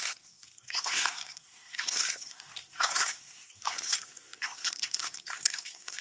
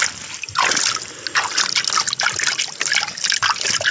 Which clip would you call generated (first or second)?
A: first